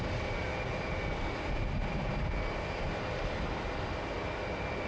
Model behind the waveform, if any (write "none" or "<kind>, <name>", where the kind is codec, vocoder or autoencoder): none